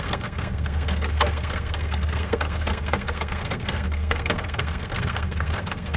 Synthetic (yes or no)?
yes